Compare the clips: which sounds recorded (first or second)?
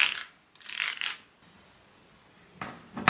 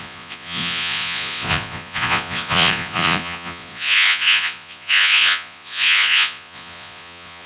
first